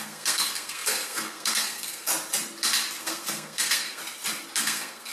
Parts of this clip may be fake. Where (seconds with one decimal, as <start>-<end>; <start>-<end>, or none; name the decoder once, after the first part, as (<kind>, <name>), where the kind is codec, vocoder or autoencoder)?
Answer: 0.0-2.1 (codec, SNAC); 3.0-4.0; 4.6-5.1